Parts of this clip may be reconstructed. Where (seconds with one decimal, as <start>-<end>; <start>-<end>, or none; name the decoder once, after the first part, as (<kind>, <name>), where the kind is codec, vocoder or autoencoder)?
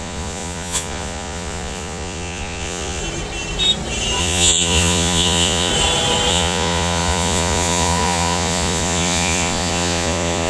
0.0-3.0 (vocoder, Vocos); 4.2-5.7; 6.3-10.5